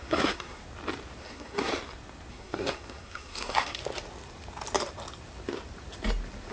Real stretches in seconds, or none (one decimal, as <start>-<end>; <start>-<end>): 0.6-1.2; 1.7-2.3; 3.8-6.5